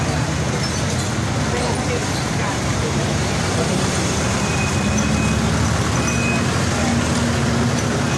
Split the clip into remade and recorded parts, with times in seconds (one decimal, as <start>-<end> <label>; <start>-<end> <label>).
0.0-2.0 recorded; 2.0-5.0 remade; 5.0-8.2 recorded